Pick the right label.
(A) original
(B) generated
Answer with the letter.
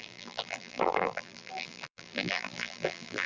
B